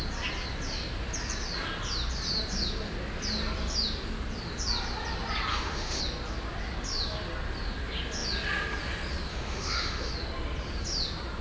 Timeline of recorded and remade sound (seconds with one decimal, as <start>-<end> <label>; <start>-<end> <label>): 0.0-5.5 recorded; 5.5-6.0 remade; 6.0-9.3 recorded; 9.3-10.1 remade; 10.1-11.4 recorded